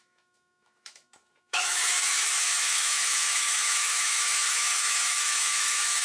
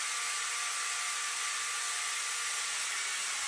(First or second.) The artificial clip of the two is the first